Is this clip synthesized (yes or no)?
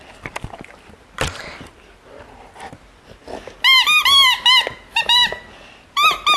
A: no